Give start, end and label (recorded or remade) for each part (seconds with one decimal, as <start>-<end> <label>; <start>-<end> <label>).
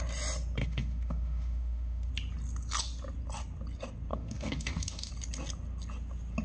0.0-0.6 recorded; 0.6-2.1 remade; 2.1-4.1 recorded; 4.1-5.1 remade; 5.1-6.4 recorded